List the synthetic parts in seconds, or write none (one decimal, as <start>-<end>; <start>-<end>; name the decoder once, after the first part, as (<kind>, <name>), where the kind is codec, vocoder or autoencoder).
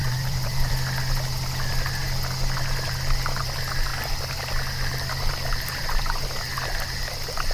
0.0-0.7 (vocoder, BigVGAN v2)